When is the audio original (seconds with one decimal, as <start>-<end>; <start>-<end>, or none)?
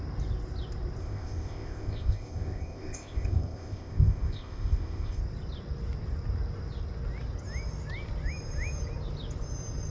0.0-1.0; 5.2-9.9